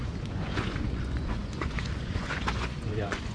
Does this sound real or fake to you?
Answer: fake